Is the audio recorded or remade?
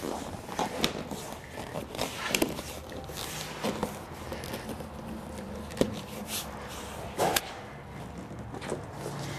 recorded